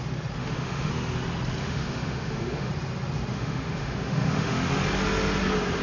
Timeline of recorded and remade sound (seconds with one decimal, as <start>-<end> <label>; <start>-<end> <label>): 0.0-0.4 recorded; 0.4-0.9 remade; 0.9-1.6 recorded; 1.6-2.7 remade; 2.7-3.3 recorded; 3.3-4.7 remade; 4.7-5.8 recorded